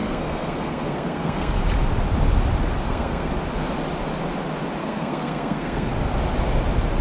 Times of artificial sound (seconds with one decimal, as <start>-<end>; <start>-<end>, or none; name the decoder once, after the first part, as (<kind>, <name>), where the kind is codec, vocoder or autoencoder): 0.0-1.6 (codec, SNAC); 2.8-3.3; 4.8-5.9